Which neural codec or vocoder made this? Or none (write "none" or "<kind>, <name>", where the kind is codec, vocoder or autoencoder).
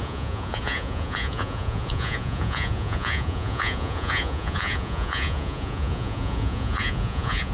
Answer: vocoder, Vocos